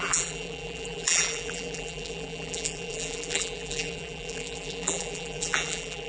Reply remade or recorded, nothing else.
remade